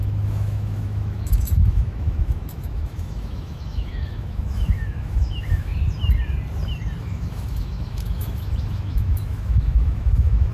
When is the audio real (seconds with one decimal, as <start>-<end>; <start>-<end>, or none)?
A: 5.7-7.0